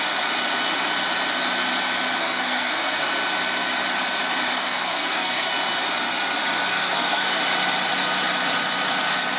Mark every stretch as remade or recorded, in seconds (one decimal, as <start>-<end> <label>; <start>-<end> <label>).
0.0-2.2 recorded; 2.2-3.1 remade; 3.1-4.5 recorded; 4.5-5.5 remade; 5.5-6.7 recorded; 6.7-7.4 remade; 7.4-9.4 recorded